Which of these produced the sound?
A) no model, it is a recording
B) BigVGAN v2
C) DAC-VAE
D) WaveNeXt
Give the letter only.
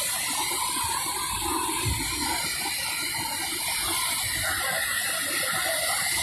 A